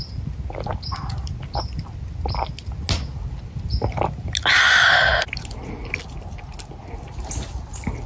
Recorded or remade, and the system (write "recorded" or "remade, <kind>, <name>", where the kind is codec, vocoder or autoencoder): recorded